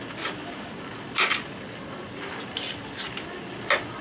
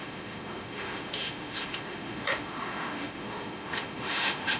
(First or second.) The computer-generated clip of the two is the second